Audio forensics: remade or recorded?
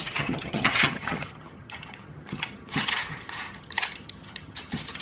remade